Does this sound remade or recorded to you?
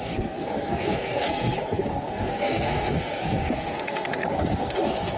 remade